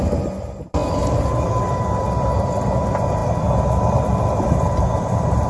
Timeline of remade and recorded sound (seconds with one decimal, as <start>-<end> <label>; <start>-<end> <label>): 0.0-3.2 recorded; 3.2-5.5 remade